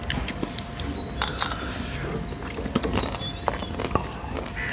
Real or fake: real